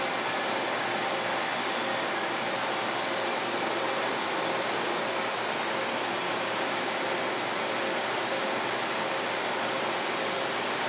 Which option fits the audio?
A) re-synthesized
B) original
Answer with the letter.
B